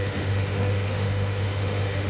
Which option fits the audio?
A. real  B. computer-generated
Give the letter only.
B